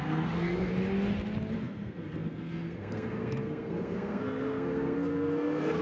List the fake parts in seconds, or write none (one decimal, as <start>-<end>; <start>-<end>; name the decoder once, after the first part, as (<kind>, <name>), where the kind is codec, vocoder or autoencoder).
0.0-0.7 (codec, SNAC); 1.5-5.8